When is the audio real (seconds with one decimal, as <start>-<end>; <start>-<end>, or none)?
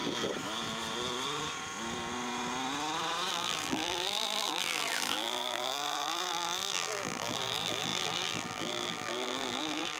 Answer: 0.0-3.3